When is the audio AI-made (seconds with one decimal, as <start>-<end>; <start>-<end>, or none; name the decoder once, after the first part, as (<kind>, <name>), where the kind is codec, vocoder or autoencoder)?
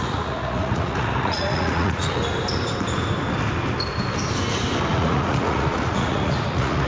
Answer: 0.0-2.2 (vocoder, Vocos); 4.9-6.9